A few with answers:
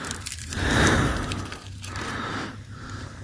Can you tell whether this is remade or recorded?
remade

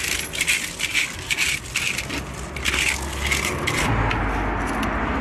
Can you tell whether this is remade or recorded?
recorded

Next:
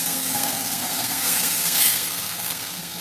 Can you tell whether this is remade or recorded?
remade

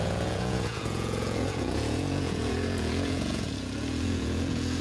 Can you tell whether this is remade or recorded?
remade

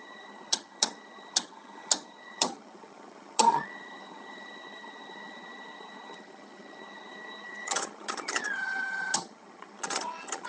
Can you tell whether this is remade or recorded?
remade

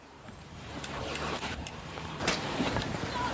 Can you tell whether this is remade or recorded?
remade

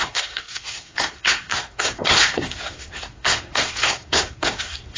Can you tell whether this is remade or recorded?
remade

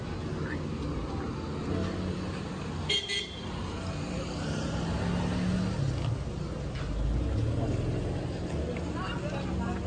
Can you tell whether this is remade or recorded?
recorded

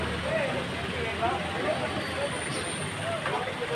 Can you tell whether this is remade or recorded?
recorded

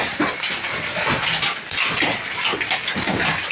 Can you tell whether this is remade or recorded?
recorded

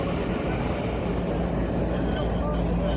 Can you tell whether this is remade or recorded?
recorded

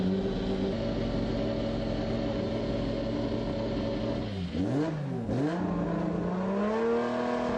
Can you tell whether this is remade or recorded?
recorded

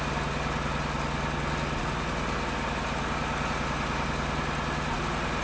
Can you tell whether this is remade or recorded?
recorded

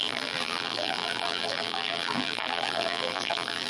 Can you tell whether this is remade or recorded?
remade